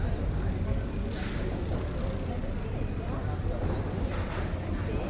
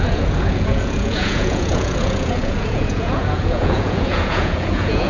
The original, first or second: first